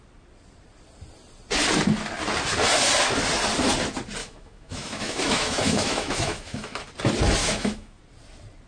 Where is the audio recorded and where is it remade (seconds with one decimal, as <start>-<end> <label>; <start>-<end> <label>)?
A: 0.0-4.2 recorded; 4.2-6.8 remade; 6.8-7.4 recorded; 7.4-8.0 remade; 8.0-8.7 recorded